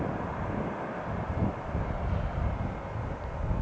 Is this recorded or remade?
recorded